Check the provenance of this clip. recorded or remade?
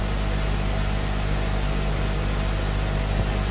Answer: recorded